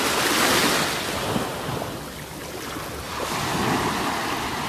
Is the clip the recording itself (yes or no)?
yes